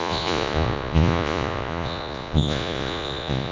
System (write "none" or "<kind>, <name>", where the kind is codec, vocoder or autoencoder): vocoder, Vocos